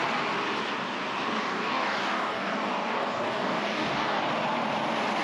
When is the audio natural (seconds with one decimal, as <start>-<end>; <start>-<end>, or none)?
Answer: 0.0-1.4; 4.2-5.2